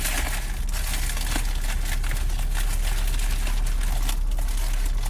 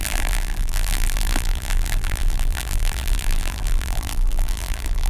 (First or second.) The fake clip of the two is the second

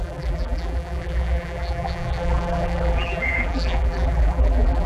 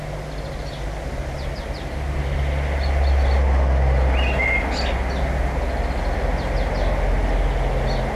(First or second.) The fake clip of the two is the first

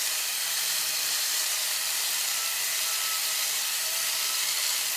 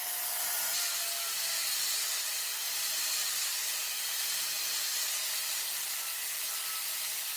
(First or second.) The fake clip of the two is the first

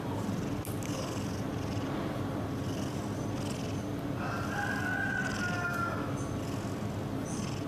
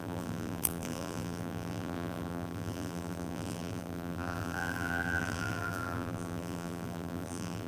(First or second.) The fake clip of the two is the second